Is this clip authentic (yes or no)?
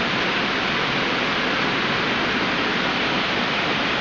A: yes